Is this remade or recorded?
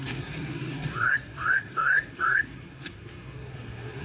remade